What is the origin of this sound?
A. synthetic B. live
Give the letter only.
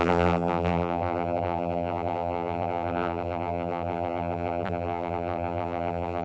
A